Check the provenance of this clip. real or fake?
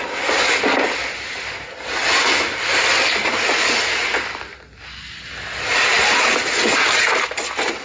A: real